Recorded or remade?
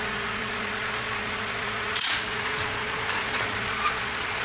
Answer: remade